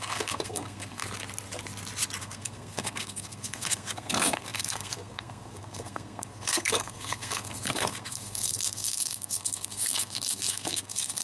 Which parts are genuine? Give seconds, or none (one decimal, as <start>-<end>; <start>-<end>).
1.0-2.2

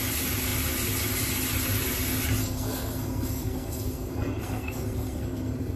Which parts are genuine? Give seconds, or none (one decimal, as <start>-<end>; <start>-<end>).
0.0-2.4

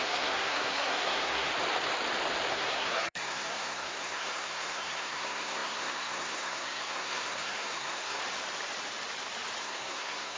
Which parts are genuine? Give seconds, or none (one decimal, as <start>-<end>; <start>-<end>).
1.5-2.5; 8.2-9.6

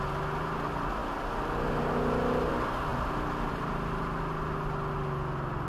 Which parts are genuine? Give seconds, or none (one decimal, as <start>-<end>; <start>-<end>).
0.0-5.7

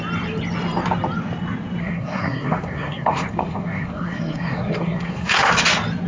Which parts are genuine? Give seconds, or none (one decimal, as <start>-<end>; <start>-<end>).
0.0-1.8; 5.5-6.1

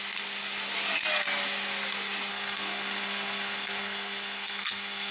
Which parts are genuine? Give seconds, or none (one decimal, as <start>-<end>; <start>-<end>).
0.0-2.3

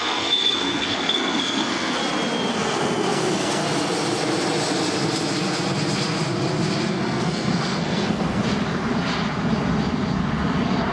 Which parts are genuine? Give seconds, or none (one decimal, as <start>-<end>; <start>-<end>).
2.0-2.5; 3.6-6.9; 8.4-10.9

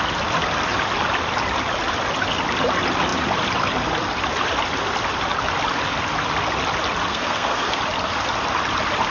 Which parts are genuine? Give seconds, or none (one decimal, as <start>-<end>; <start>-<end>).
0.0-7.1; 7.8-9.1